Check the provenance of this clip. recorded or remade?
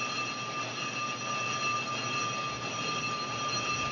recorded